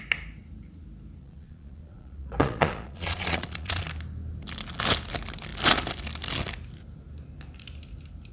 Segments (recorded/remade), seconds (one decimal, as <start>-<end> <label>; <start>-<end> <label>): 0.0-1.2 recorded; 1.2-3.8 remade; 3.8-8.3 recorded